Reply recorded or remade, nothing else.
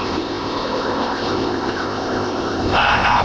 remade